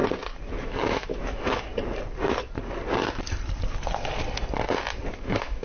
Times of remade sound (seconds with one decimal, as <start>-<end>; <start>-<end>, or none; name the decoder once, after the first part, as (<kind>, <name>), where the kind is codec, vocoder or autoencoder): 0.6-1.7 (autoencoder, DAC-VAE); 5.1-5.6